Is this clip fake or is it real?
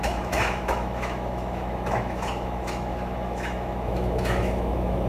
fake